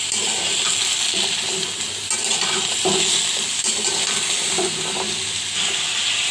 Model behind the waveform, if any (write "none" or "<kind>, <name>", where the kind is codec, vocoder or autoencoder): none